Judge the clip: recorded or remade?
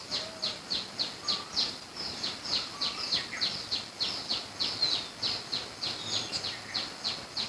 recorded